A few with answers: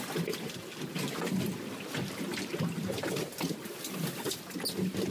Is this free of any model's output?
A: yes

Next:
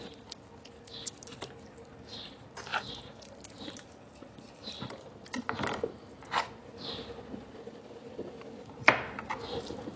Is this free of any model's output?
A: yes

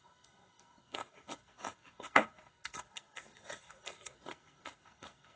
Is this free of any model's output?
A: no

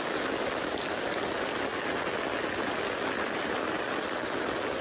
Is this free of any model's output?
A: yes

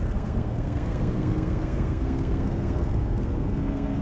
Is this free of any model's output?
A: no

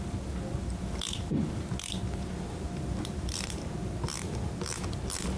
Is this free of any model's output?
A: yes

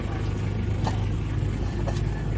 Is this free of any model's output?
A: yes